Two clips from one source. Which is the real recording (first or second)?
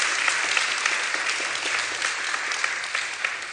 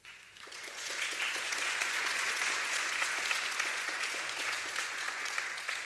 first